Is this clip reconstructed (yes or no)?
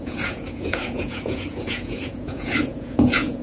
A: yes